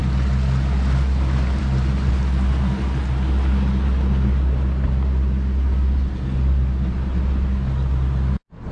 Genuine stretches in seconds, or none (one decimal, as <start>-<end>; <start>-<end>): 0.0-8.7

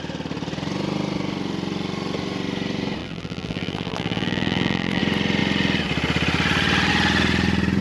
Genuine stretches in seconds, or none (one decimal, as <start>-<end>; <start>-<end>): 0.0-3.0; 5.0-7.8

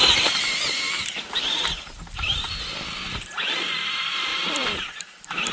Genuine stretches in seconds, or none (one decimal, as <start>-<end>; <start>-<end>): 3.3-4.3

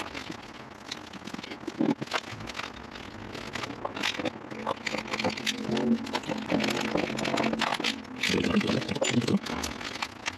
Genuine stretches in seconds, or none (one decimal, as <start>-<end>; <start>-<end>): 0.0-10.4

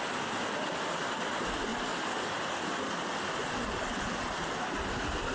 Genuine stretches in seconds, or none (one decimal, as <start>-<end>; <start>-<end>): 0.0-5.3

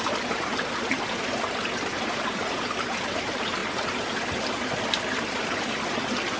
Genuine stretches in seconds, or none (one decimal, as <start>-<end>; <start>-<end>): 0.0-6.4